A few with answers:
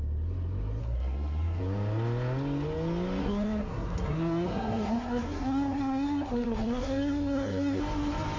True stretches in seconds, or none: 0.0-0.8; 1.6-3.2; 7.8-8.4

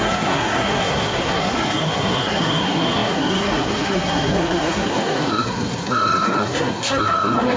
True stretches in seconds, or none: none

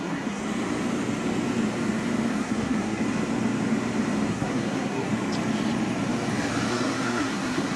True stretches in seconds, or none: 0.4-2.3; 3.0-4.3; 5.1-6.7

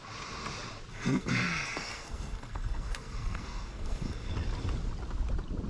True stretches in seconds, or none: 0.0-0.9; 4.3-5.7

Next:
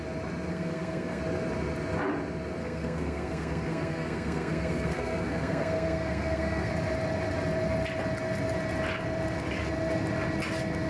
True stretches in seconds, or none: 0.0-0.5; 1.2-2.6; 6.7-10.9

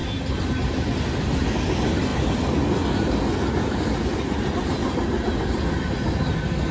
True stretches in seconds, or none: 0.0-6.7